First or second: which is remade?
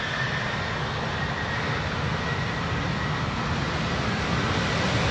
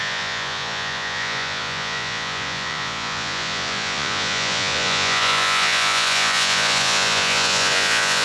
second